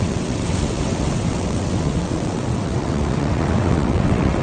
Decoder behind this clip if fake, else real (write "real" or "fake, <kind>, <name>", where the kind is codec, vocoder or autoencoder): fake, vocoder, WaveNeXt